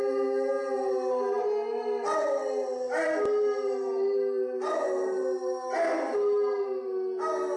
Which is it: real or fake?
real